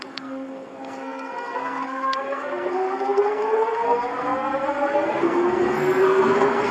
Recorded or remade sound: remade